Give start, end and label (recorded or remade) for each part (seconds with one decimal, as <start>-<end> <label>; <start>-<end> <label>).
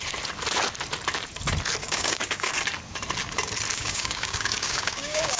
0.0-1.8 recorded; 1.8-2.5 remade; 2.5-3.7 recorded; 3.7-5.4 remade